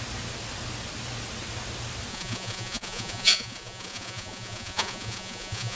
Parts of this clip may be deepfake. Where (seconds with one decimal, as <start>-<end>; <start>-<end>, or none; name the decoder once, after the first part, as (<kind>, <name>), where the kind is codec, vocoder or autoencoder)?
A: 2.1-5.8 (vocoder, Vocos)